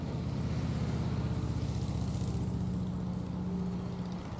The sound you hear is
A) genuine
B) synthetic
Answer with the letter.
A